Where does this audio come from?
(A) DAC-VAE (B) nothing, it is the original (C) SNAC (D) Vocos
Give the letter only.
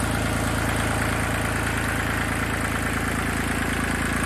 B